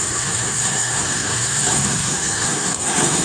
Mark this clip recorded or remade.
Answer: remade